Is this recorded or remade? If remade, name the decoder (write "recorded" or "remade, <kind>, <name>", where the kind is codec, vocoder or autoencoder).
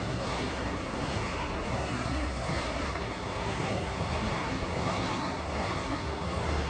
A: remade, codec, SNAC